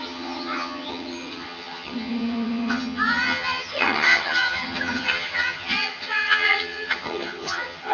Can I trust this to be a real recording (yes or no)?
no